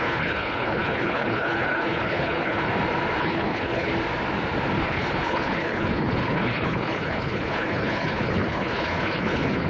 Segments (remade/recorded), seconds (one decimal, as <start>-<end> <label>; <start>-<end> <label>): 0.0-2.7 remade; 2.7-3.2 recorded; 3.2-3.9 remade; 3.9-4.8 recorded; 4.8-9.7 remade